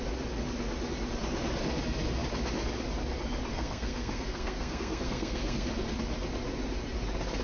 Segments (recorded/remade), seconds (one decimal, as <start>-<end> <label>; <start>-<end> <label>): 0.0-3.5 recorded; 3.5-5.7 remade; 5.7-7.4 recorded